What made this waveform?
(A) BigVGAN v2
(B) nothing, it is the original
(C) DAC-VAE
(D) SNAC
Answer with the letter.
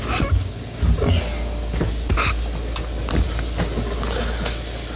B